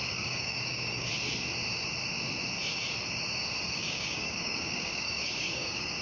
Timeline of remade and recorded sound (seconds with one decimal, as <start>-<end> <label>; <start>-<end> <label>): 0.0-1.1 remade; 1.1-3.7 recorded; 3.7-6.0 remade